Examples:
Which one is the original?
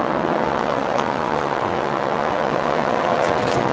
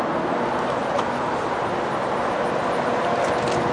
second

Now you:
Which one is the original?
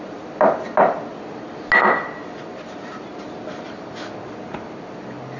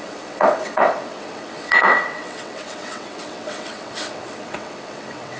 first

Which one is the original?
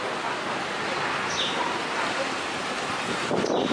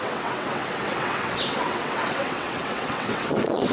first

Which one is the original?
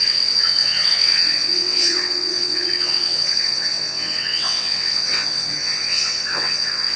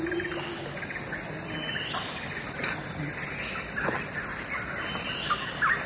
second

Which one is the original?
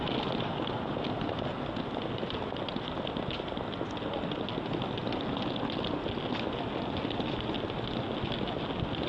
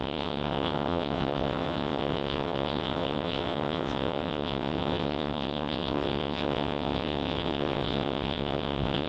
first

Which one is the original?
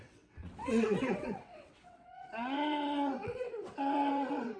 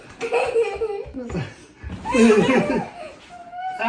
second